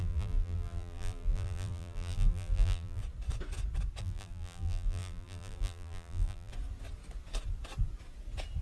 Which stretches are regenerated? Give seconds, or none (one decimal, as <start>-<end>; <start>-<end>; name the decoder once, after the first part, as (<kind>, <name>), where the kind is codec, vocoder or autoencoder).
0.0-3.0 (vocoder, BigVGAN v2); 4.0-6.5